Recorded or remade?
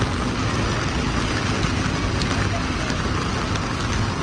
recorded